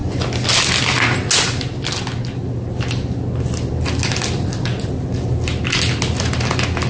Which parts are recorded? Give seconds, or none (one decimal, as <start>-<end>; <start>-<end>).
0.0-6.9